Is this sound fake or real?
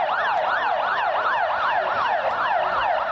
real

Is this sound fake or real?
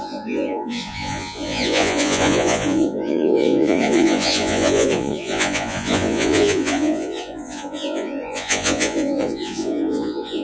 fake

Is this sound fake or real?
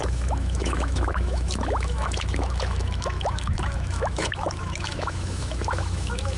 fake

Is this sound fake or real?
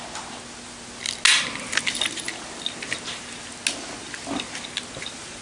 real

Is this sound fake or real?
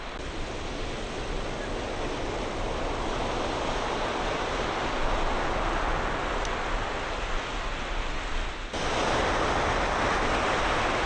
real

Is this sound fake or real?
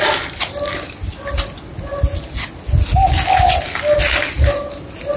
real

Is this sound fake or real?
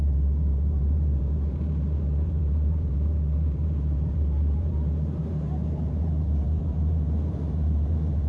fake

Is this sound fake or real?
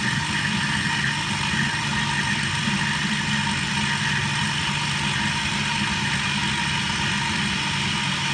real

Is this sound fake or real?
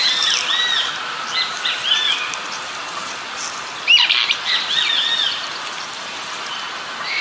real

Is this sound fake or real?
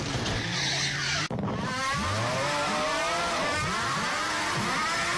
real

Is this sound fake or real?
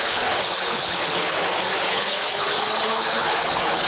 fake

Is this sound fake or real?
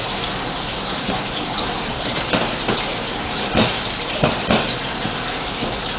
real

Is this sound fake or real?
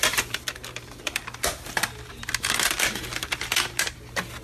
real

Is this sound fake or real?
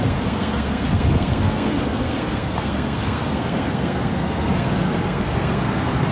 fake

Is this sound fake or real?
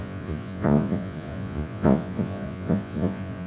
fake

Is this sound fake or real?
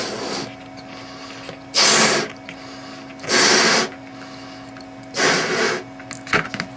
real